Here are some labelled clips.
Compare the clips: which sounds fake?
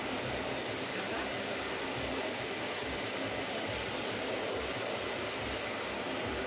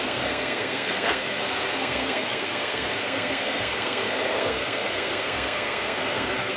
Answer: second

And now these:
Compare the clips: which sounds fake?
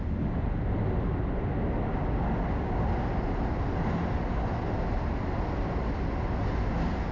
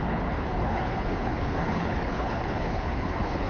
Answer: second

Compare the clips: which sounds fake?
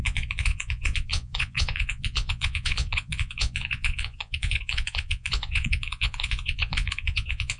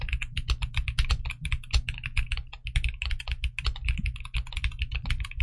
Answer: first